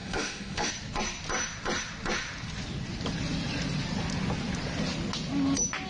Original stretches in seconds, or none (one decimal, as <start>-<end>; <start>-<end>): 0.7-5.9